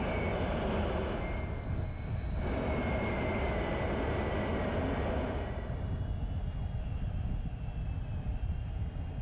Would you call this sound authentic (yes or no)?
yes